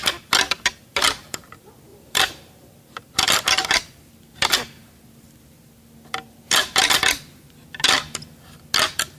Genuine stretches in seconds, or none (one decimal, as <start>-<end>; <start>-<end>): 0.0-1.9; 2.8-9.2